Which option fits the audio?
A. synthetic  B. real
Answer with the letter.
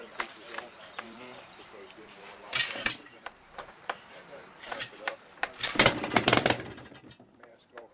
A